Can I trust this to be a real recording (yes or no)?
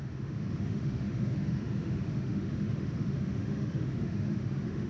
no